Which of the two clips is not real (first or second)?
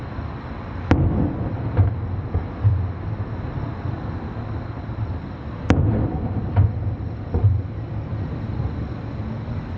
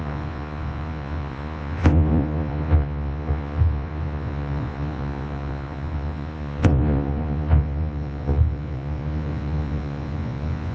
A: second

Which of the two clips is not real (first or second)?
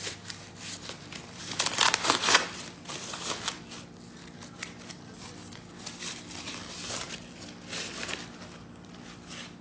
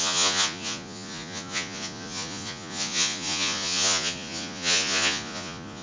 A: second